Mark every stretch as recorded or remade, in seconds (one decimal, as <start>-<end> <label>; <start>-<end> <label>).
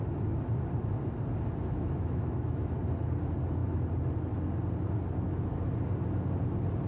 0.0-1.6 recorded; 1.6-2.8 remade; 2.8-6.9 recorded